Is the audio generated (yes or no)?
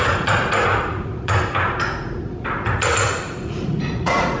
yes